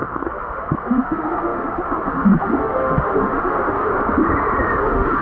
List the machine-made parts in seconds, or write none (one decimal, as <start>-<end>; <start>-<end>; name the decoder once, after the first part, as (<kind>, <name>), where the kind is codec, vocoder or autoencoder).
0.0-3.9 (autoencoder, DAC-VAE); 4.8-5.2